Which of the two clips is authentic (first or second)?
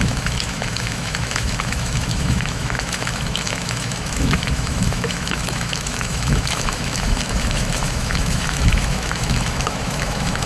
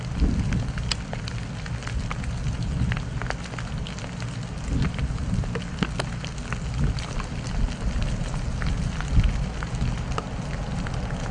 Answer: second